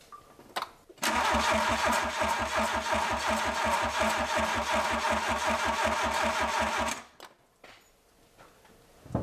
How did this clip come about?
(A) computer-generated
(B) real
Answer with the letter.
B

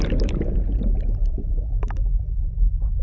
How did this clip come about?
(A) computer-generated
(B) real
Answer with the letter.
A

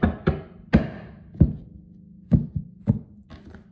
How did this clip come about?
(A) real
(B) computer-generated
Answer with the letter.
A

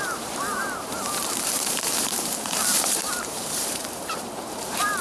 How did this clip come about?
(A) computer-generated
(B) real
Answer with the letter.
A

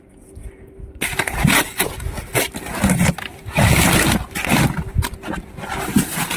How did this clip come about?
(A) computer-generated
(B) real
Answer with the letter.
B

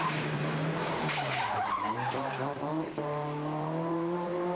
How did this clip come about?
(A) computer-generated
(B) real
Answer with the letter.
A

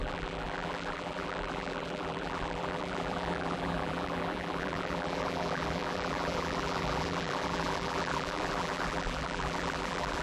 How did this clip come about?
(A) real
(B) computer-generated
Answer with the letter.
B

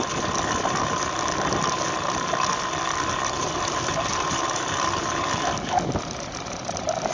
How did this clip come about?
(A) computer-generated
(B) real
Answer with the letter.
B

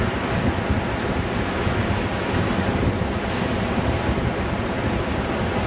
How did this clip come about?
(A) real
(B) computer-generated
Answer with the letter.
A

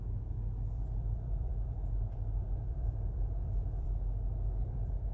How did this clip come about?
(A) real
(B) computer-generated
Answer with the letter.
B